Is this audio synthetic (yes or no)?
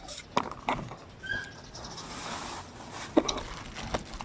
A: no